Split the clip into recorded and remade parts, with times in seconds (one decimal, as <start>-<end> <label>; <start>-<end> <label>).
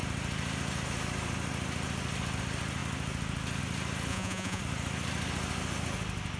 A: 0.0-4.1 recorded; 4.1-4.6 remade; 4.6-6.4 recorded